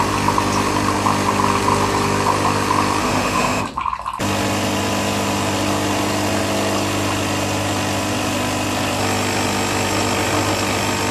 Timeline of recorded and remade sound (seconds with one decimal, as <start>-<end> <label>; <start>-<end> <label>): 0.0-3.0 recorded; 3.0-3.6 remade; 3.6-11.1 recorded